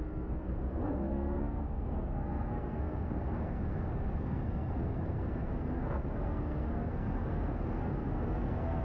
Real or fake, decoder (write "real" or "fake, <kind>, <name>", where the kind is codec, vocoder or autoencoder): fake, codec, SNAC